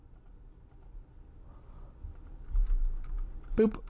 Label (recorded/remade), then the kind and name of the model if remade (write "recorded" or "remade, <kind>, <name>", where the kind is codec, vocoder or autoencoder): recorded